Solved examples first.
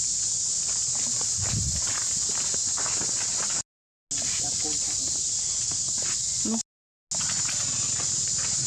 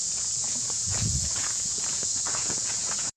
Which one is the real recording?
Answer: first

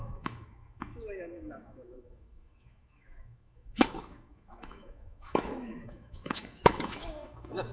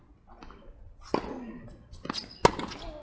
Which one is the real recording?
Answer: second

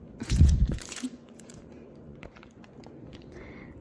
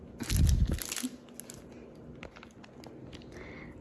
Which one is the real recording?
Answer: second